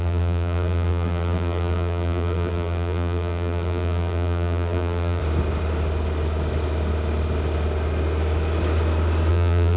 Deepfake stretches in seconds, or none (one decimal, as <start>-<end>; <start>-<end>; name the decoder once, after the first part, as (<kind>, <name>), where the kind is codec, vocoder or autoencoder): 0.0-5.2 (vocoder, BigVGAN v2); 9.3-9.8